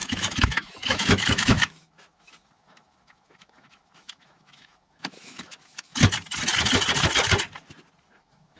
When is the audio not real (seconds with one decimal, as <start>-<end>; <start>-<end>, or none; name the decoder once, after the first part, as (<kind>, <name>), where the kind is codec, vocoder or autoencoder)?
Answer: 0.0-5.9 (autoencoder, DAC-VAE); 8.0-8.6